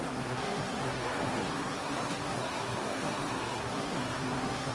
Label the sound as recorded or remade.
remade